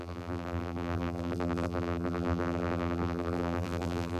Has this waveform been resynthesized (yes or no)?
yes